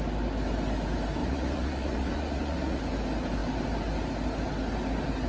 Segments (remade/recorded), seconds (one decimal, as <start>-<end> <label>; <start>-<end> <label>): 0.0-1.2 recorded; 1.2-2.8 remade; 2.8-5.3 recorded